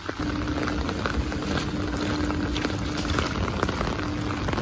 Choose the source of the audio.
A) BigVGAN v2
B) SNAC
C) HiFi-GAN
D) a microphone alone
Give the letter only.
D